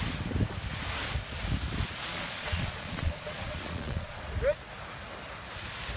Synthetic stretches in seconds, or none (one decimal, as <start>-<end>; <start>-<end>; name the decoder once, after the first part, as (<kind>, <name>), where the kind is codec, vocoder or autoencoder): 2.1-4.2 (vocoder, Vocos)